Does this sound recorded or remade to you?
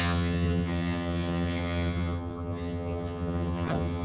remade